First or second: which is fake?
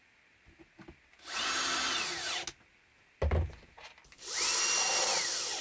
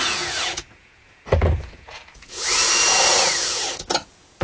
second